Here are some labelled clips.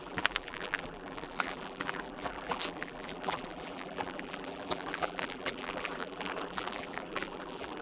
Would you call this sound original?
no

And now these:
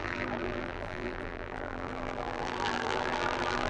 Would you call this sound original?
no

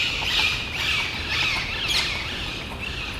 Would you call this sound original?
yes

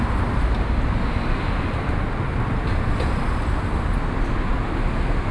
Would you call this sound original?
yes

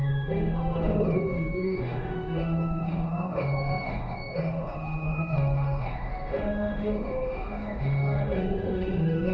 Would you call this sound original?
no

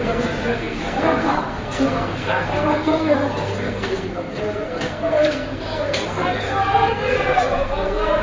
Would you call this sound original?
no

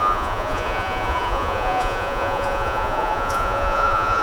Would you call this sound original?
no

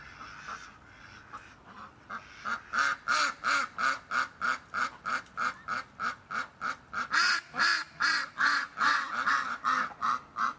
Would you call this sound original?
yes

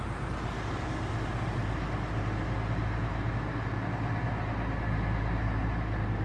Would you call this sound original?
yes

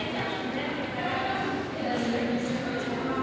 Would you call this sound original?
yes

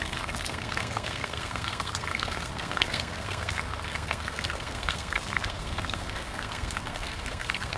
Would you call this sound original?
no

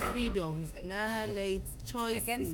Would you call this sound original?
no